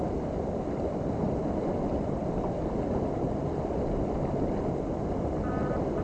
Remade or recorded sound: recorded